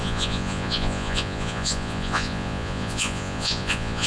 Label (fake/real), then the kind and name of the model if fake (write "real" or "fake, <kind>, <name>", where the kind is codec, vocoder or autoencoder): fake, vocoder, Vocos